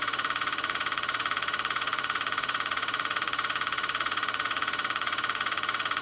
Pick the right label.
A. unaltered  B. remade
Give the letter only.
B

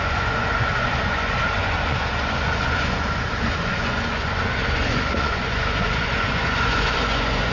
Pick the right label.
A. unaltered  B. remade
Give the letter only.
B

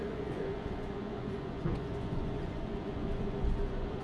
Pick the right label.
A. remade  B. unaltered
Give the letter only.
A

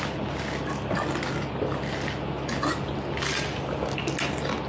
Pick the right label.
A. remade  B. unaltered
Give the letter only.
B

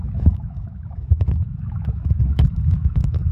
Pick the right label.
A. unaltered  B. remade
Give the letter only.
B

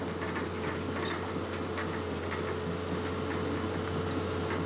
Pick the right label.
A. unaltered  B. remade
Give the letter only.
A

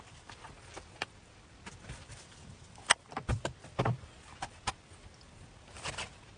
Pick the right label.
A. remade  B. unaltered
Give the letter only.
A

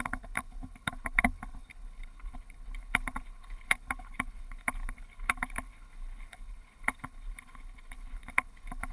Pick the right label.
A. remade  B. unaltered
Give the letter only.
A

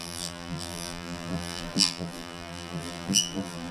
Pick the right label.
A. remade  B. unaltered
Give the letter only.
A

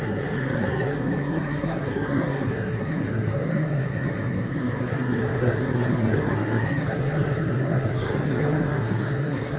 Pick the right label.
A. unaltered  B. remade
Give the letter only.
B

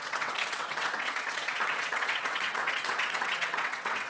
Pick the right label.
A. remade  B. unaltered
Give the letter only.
A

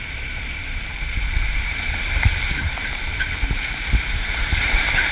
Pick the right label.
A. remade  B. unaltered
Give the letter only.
A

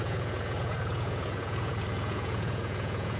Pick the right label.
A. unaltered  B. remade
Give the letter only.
B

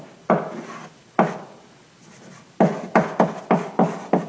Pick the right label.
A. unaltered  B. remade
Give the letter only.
A